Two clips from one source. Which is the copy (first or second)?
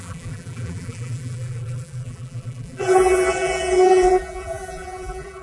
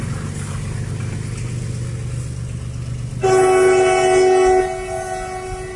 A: first